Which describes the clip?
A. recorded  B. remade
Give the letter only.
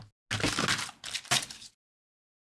A